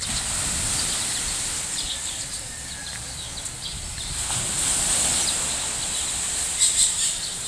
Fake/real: real